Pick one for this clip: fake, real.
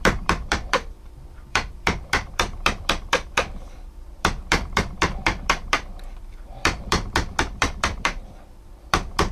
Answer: fake